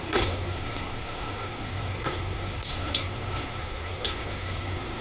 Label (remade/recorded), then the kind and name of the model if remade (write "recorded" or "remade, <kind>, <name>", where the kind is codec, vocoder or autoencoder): remade, codec, SNAC